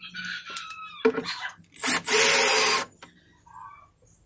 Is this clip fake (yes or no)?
no